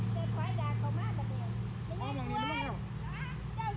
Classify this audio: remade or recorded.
recorded